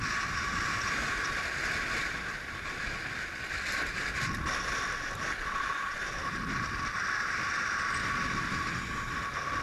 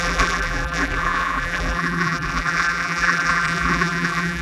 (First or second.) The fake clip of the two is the second